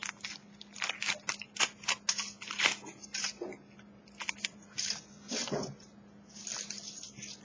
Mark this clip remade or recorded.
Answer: recorded